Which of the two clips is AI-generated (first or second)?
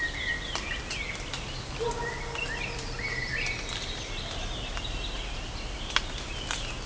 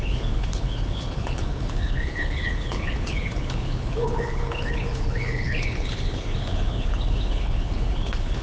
second